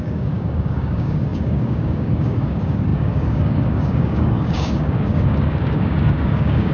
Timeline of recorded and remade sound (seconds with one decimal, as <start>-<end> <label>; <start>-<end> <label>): 0.0-6.7 remade